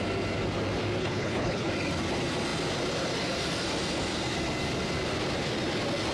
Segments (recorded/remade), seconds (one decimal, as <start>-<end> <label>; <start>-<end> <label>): 0.0-1.0 recorded; 1.0-1.7 remade; 1.7-6.1 recorded